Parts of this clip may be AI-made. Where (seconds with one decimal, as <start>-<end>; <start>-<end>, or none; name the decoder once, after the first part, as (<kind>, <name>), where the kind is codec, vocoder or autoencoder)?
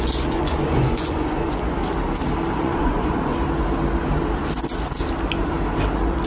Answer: 0.0-1.8 (vocoder, Vocos); 2.5-3.3